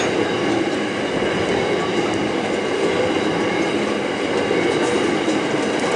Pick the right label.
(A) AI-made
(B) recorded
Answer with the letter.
B